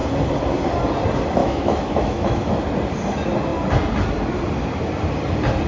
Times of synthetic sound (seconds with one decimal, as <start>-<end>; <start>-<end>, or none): 1.4-2.5